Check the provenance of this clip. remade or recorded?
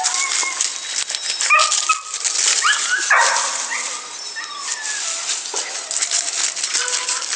recorded